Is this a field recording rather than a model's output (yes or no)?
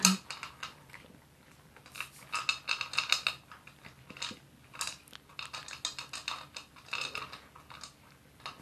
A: yes